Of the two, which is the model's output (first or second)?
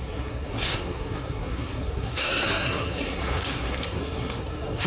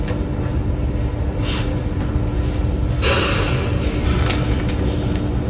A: first